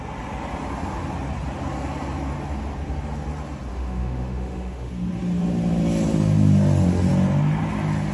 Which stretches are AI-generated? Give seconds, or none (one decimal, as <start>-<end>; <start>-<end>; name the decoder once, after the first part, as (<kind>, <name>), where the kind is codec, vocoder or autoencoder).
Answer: 3.7-4.9 (autoencoder, DAC-VAE)